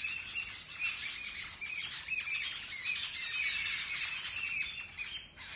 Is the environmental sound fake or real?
real